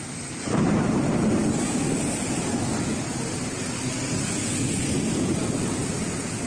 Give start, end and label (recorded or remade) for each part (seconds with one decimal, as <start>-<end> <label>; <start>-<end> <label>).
0.0-6.5 recorded